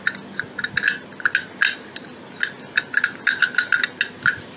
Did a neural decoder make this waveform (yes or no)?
no